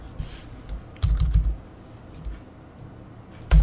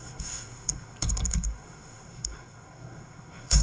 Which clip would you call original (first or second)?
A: first